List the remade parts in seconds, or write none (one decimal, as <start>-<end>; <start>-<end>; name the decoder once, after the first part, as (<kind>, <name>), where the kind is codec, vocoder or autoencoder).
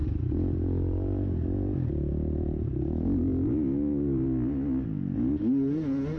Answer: none